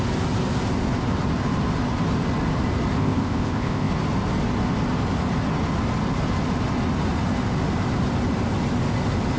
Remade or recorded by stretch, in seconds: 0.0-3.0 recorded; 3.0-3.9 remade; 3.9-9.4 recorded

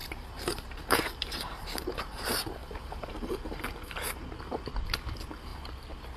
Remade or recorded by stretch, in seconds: 0.0-2.0 remade; 2.0-2.6 recorded; 2.6-3.6 remade; 3.6-5.5 recorded; 5.5-6.2 remade

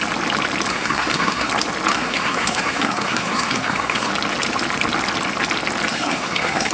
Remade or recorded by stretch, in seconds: 0.0-0.7 recorded; 0.7-1.5 remade; 1.5-1.9 recorded; 1.9-4.1 remade; 4.1-5.9 recorded; 5.9-6.7 remade